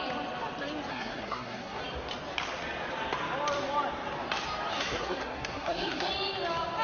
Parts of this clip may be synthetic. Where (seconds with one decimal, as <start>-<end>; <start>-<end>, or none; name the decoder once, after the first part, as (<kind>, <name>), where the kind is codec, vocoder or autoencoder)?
0.9-1.8 (codec, SNAC); 4.7-6.1